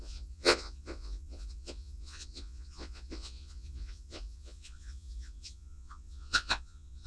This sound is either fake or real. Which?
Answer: fake